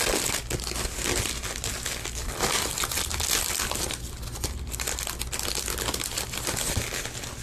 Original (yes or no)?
yes